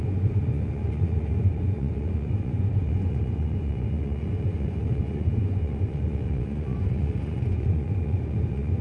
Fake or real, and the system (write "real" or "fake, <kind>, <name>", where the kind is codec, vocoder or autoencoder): fake, vocoder, Vocos